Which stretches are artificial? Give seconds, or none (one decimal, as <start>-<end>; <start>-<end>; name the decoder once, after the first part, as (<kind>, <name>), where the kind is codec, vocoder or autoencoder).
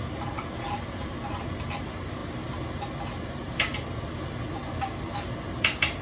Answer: 0.0-2.2 (vocoder, BigVGAN v2)